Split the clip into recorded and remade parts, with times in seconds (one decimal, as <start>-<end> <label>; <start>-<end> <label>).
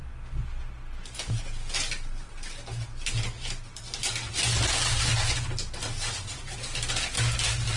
0.0-7.8 recorded